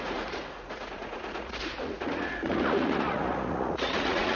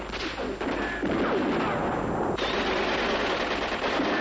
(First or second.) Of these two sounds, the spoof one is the first